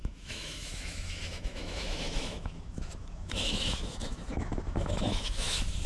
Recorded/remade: remade